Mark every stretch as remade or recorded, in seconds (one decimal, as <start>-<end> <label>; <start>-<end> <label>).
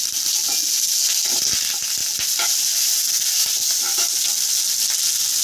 0.0-5.4 recorded